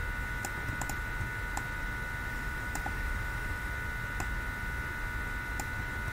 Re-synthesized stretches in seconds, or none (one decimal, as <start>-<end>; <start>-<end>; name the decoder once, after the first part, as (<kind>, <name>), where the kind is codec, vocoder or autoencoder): 2.3-3.7 (autoencoder, DAC-VAE)

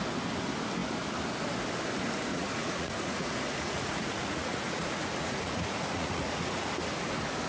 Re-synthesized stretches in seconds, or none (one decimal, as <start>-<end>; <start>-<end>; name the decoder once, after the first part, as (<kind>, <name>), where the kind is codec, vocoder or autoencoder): 2.3-6.7 (vocoder, Vocos)

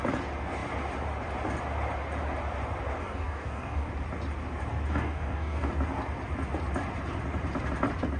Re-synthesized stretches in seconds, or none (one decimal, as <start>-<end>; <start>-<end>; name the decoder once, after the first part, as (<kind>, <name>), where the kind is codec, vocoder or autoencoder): 3.0-3.9 (codec, DAC); 4.9-5.7

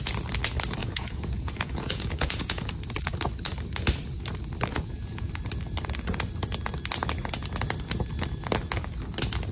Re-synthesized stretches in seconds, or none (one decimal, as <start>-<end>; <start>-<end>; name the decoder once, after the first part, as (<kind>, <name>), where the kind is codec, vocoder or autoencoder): 0.8-2.7 (vocoder, Vocos); 4.7-5.3

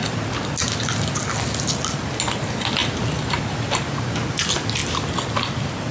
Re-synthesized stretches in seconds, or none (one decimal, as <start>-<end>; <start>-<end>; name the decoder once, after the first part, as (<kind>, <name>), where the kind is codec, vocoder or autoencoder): none

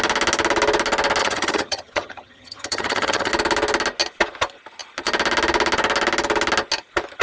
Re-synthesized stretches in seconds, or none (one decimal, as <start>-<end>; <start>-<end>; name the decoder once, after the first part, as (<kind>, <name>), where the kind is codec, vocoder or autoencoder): 1.2-3.3 (vocoder, HiFi-GAN)

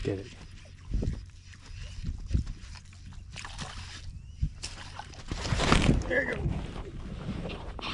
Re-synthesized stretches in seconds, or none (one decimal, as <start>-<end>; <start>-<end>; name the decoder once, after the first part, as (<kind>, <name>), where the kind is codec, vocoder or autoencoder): 4.0-7.9 (vocoder, BigVGAN v2)

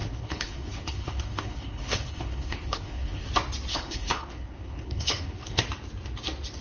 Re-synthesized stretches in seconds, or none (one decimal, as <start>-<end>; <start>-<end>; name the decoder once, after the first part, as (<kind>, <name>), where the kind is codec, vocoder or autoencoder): 0.0-3.2 (codec, HILCodec); 3.7-5.6